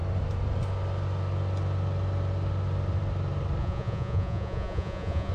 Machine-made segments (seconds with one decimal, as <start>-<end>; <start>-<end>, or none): 3.6-5.3